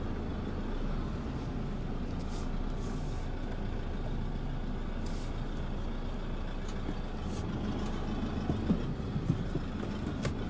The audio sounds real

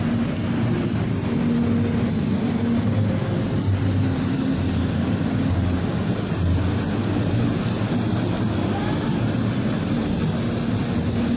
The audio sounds real